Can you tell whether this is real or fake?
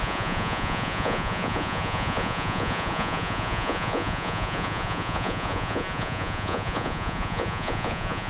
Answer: fake